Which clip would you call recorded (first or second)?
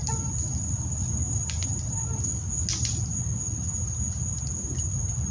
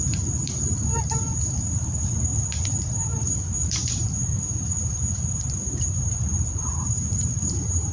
first